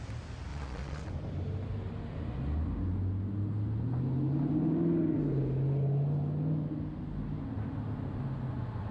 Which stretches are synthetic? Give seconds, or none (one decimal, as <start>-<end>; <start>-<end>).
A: 0.5-1.1